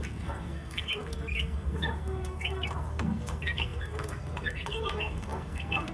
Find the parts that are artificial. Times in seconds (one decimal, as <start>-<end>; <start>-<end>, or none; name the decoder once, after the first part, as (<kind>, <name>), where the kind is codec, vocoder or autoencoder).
0.0-5.9 (codec, SNAC)